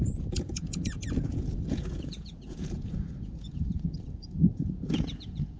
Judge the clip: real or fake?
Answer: fake